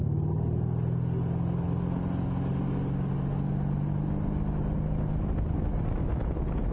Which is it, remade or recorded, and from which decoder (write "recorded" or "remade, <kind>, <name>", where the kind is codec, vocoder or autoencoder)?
recorded